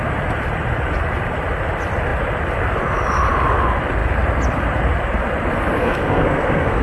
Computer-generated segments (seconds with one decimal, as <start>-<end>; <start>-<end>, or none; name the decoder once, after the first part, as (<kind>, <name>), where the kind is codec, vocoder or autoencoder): 5.8-6.8 (codec, SNAC)